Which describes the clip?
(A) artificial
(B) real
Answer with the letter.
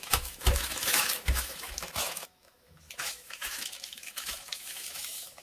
A